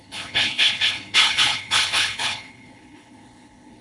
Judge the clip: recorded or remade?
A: remade